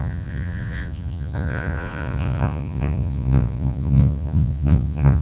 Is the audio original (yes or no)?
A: no